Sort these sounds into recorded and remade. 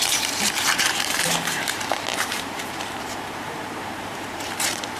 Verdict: remade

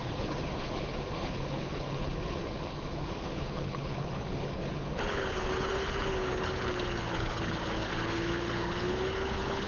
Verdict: remade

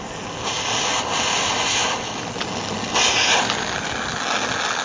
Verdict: recorded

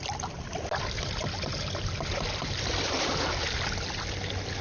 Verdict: recorded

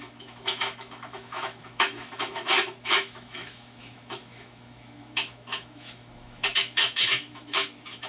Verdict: remade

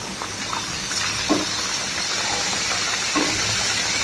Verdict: recorded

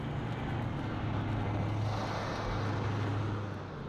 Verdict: recorded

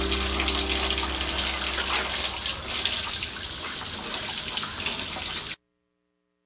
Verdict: recorded